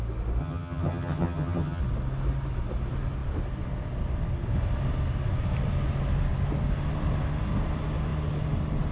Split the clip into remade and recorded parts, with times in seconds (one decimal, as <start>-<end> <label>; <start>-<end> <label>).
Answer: 0.0-0.4 recorded; 0.4-1.8 remade; 1.8-8.9 recorded